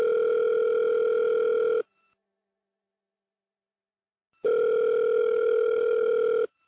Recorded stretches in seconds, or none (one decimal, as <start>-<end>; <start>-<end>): 0.0-5.2; 6.1-6.7